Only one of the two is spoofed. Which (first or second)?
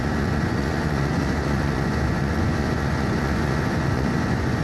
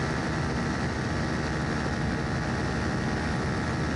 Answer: first